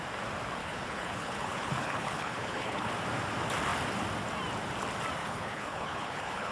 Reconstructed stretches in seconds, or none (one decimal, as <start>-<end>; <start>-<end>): 0.6-2.9; 5.2-6.5